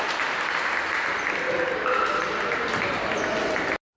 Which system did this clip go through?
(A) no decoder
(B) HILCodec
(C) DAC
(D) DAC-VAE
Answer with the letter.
A